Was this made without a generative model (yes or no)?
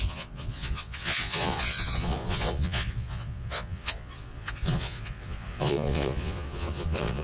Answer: no